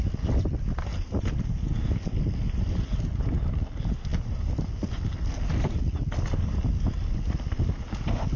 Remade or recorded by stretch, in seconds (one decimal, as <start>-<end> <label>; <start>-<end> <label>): 0.0-8.4 recorded